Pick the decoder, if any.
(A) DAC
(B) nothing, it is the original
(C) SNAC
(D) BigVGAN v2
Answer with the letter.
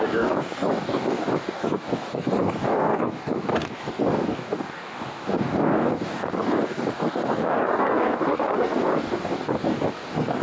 A